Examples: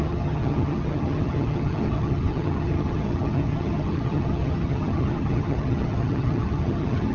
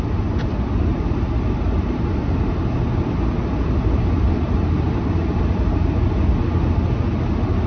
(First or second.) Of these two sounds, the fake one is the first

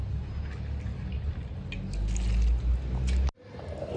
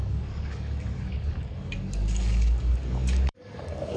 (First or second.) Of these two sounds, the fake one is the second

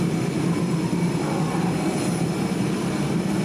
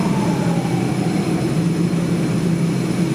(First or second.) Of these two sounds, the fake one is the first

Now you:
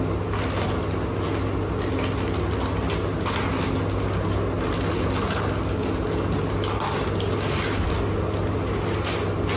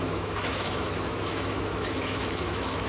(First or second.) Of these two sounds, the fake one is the second